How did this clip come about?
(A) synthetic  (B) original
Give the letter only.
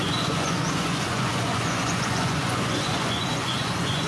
A